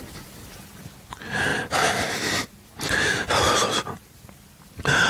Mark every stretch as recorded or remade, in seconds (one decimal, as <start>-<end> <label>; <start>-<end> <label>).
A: 0.0-5.1 recorded

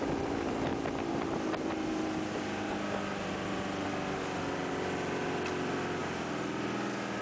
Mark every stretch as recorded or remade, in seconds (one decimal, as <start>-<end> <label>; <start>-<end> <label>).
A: 0.0-7.2 recorded